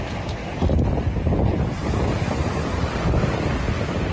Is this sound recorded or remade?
recorded